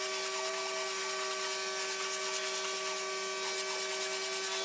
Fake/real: real